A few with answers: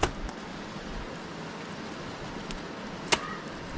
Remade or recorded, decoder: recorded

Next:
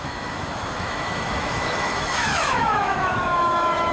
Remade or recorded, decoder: remade, autoencoder, DAC-VAE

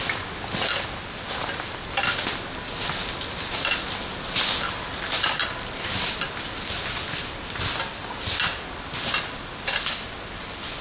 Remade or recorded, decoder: recorded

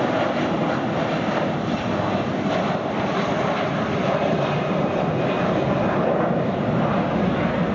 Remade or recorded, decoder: recorded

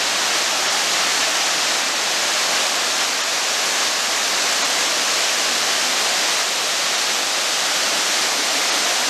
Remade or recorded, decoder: recorded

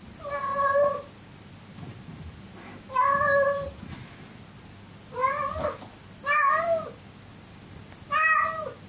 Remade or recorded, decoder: recorded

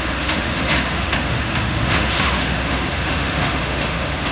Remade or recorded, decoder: remade, autoencoder, DAC-VAE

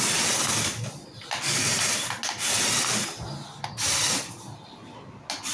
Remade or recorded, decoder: recorded